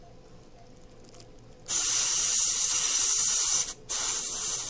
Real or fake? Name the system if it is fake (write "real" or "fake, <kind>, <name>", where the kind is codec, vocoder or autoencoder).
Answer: real